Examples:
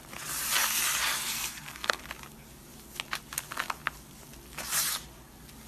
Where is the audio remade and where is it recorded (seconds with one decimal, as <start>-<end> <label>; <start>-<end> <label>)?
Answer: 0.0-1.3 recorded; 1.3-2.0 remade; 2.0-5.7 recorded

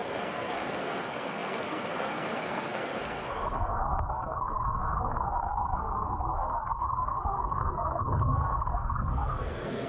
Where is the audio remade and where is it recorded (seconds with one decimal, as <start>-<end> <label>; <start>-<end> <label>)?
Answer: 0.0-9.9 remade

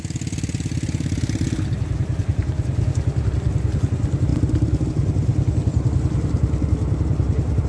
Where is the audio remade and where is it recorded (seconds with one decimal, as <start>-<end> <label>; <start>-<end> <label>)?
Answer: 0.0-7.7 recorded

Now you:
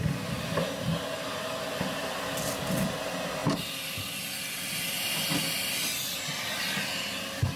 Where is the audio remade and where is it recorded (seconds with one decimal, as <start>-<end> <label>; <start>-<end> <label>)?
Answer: 0.0-7.6 recorded